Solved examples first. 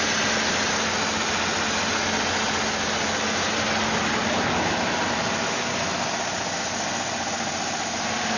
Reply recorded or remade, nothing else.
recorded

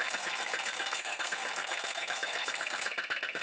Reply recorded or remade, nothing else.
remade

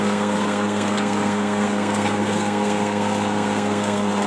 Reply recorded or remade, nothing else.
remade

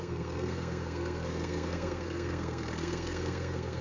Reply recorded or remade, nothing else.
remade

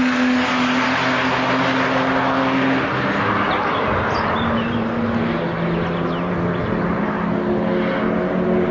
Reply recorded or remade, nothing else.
recorded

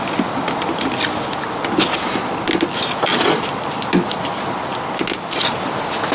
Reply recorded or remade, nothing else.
recorded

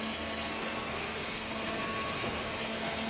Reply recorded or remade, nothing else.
remade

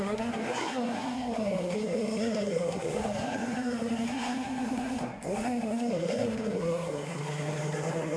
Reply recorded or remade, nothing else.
remade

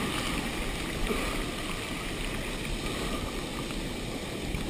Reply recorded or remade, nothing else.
recorded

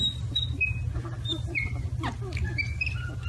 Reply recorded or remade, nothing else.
recorded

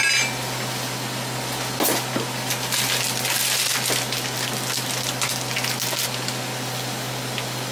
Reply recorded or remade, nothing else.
recorded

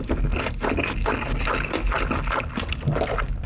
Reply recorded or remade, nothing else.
recorded